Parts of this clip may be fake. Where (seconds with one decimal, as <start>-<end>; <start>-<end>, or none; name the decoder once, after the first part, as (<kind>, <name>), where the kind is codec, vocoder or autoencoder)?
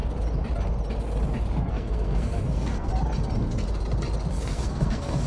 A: 1.7-2.9 (codec, SNAC); 4.3-5.3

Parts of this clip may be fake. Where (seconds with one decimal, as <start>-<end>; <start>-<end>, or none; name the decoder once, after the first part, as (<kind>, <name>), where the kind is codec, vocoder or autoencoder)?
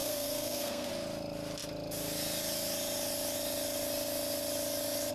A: 0.0-0.9 (codec, SNAC)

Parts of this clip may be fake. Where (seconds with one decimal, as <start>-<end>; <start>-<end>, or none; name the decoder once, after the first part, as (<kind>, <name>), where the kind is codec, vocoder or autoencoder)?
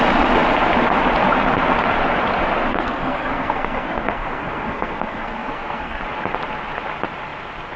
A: 2.7-6.0 (codec, SNAC)